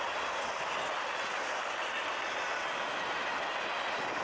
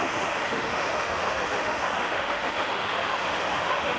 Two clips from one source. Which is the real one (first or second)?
first